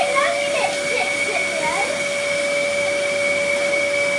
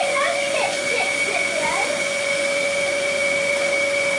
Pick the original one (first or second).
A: first